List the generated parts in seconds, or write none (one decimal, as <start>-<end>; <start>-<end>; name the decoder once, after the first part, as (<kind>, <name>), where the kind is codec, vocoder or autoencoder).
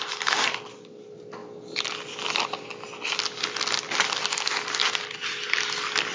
none